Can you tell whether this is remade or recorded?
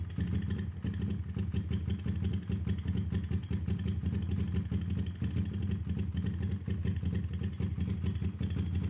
recorded